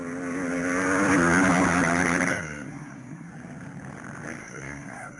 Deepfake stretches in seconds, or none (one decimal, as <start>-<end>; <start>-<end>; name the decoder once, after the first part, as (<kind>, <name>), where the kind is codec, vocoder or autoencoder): 2.3-3.3 (codec, SNAC); 4.4-5.2

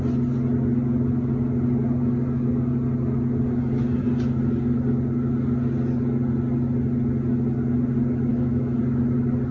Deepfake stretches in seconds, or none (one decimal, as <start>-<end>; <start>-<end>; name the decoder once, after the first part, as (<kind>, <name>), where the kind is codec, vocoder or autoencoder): 8.3-8.8 (autoencoder, DAC-VAE)

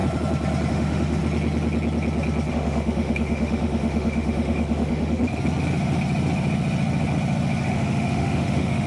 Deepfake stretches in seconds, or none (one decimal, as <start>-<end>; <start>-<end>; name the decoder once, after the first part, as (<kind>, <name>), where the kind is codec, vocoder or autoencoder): 0.7-1.2 (autoencoder, DAC-VAE); 2.5-5.2; 7.7-8.9

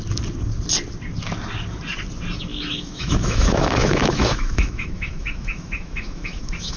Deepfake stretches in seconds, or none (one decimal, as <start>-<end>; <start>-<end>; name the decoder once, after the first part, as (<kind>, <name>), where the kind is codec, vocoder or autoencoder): 2.5-6.8 (autoencoder, DAC-VAE)

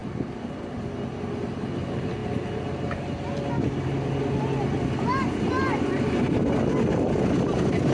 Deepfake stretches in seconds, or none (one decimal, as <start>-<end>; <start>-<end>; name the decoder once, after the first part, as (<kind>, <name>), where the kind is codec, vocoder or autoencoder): 0.0-0.6 (vocoder, BigVGAN v2)

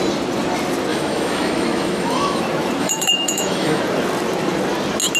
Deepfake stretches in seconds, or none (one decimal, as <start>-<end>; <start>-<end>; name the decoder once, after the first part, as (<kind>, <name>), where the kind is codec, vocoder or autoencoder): 0.9-2.4 (autoencoder, DAC-VAE); 2.8-3.8

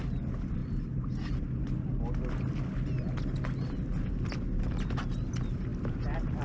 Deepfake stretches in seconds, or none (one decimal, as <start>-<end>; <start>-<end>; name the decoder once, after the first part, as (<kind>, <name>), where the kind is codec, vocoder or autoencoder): none